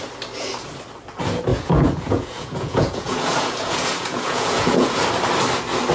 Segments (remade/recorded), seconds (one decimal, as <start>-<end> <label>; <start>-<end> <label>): 0.0-1.5 recorded; 1.5-5.0 remade; 5.0-5.9 recorded